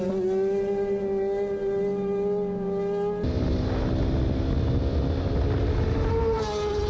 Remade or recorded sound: recorded